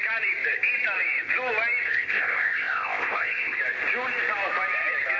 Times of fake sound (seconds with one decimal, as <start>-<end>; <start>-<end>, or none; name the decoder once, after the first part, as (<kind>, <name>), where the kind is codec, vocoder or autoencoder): 1.9-3.6 (codec, ZipCodec)